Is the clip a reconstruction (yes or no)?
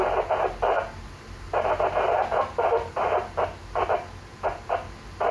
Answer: no